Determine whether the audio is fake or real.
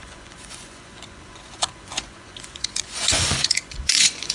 fake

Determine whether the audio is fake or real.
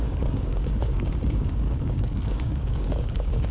fake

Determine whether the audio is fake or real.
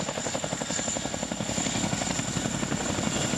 real